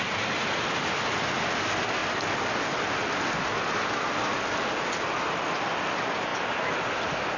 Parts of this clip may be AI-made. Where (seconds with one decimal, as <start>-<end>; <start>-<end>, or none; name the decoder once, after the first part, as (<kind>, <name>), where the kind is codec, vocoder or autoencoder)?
none